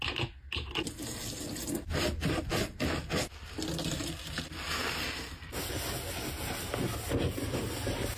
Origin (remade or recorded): recorded